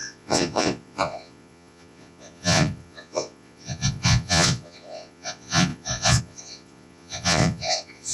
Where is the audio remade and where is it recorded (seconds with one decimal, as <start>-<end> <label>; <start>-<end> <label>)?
0.0-8.1 remade

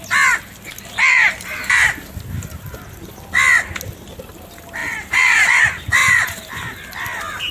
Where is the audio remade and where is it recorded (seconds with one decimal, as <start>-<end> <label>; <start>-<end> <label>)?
0.0-1.1 recorded; 1.1-1.7 remade; 1.7-4.8 recorded; 4.8-5.6 remade; 5.6-6.0 recorded; 6.0-6.6 remade; 6.6-7.5 recorded

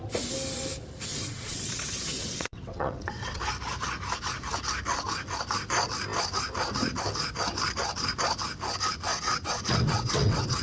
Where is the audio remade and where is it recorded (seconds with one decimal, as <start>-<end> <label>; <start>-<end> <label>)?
0.0-1.1 recorded; 1.1-3.4 remade; 3.4-9.1 recorded; 9.1-10.6 remade

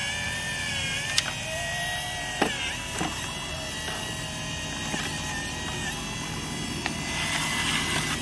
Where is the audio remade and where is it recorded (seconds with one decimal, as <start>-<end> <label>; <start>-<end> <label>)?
0.0-8.2 recorded

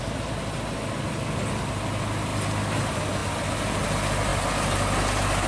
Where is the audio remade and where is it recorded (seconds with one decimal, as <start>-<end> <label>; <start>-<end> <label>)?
0.0-5.5 recorded

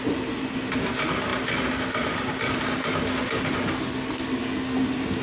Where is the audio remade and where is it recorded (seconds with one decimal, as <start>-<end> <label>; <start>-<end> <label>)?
0.0-5.2 recorded